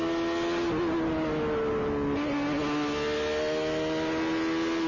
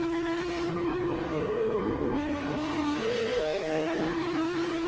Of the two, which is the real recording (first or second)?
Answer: first